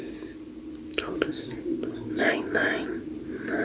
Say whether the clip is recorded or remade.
recorded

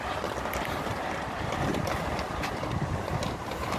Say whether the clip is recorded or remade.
remade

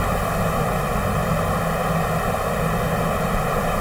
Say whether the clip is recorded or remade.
recorded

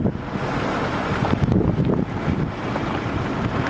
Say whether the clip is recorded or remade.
remade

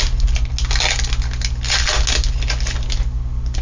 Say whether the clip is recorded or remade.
recorded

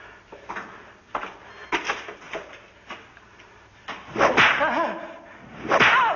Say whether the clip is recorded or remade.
recorded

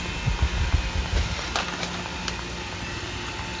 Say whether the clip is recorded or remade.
recorded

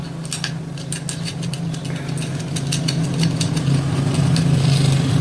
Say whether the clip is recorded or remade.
recorded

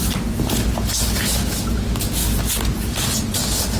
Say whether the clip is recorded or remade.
recorded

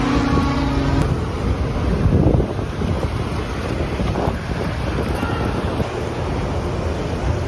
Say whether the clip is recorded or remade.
recorded